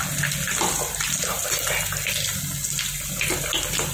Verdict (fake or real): real